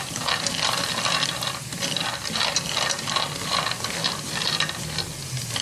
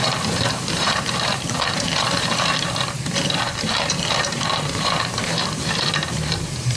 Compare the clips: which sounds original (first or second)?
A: first